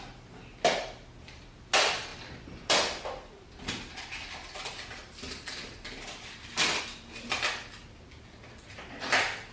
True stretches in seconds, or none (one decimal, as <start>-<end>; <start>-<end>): 0.0-9.5

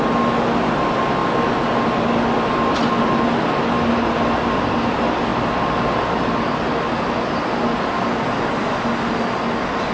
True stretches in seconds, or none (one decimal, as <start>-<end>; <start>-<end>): 0.0-9.9

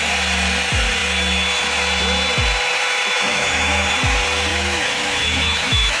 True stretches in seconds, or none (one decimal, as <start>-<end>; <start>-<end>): 0.0-3.2; 3.9-4.5

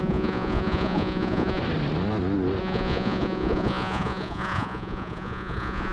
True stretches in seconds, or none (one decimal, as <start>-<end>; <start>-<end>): 1.6-2.6

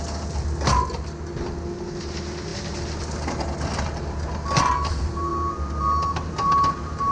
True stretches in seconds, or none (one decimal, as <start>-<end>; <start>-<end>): 0.0-7.1